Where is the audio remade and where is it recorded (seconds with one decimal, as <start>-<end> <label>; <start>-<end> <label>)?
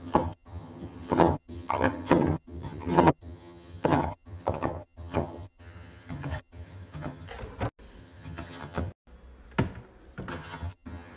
0.0-7.3 remade; 7.3-8.0 recorded; 8.0-8.9 remade; 8.9-10.3 recorded; 10.3-11.2 remade